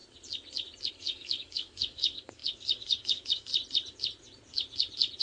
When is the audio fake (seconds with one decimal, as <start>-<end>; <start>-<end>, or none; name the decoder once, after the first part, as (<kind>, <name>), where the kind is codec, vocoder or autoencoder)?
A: 0.9-3.5 (codec, DAC)